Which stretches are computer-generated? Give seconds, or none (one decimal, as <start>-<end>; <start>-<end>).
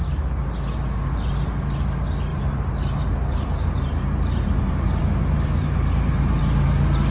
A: 2.3-6.4